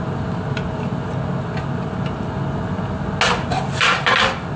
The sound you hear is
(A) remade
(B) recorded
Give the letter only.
B